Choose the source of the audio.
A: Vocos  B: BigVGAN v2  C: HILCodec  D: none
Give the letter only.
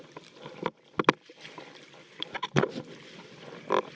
D